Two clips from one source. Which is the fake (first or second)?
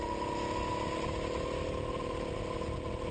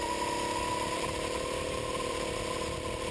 second